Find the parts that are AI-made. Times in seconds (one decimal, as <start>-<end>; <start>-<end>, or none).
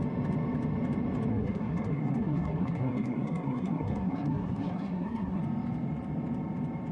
1.3-5.4